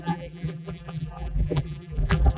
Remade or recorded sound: remade